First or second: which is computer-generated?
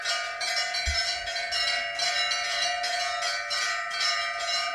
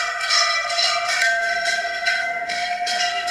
second